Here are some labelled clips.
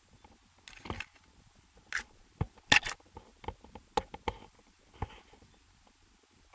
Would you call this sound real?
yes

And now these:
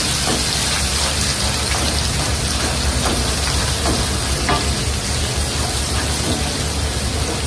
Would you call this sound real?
yes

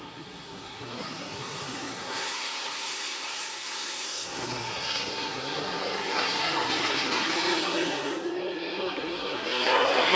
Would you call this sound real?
no